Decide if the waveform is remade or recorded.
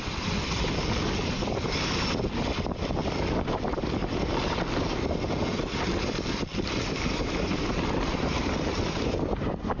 recorded